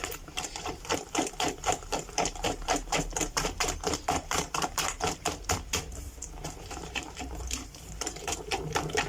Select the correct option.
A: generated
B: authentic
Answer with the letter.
A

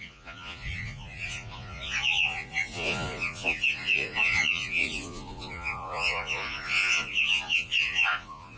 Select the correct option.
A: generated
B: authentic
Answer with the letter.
A